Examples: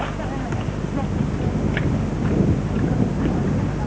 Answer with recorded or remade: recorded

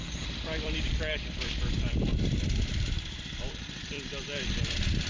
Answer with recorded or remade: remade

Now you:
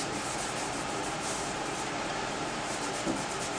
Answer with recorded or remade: remade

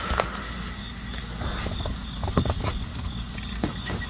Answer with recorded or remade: recorded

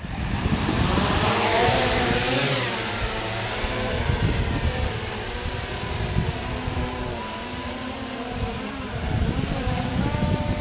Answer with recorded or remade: remade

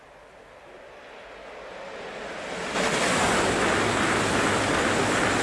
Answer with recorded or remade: recorded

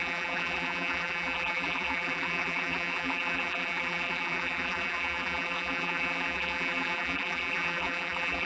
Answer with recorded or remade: remade